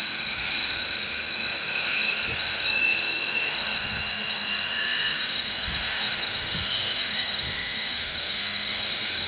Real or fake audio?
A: fake